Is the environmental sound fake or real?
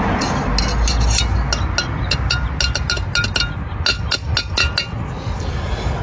real